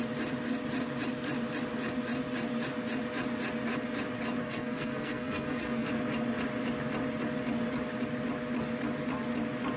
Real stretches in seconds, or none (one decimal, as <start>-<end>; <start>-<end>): 0.0-4.4; 5.9-9.8